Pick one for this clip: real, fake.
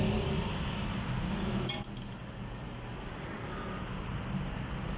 real